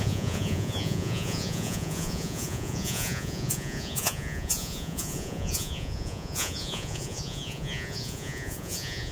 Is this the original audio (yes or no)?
no